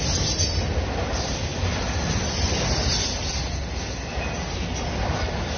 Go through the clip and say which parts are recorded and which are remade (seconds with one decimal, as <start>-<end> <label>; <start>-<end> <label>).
0.0-5.6 recorded